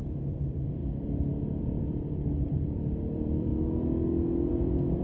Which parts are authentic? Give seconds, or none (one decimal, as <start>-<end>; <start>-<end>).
3.5-4.5